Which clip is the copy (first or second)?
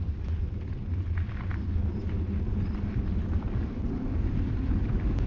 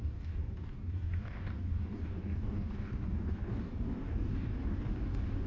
second